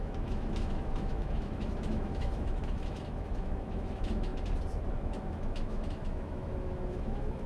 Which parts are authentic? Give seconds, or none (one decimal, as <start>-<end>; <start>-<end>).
4.3-4.9